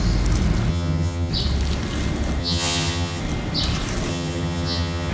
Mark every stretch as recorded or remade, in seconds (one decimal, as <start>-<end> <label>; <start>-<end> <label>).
0.0-0.7 recorded; 0.7-1.3 remade; 1.3-2.4 recorded; 2.4-3.2 remade; 3.2-4.1 recorded; 4.1-5.1 remade